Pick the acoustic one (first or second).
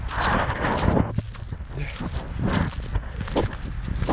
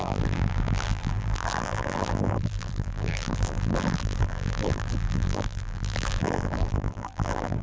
first